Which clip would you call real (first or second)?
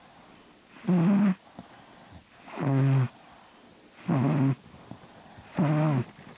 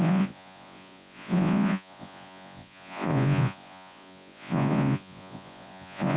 first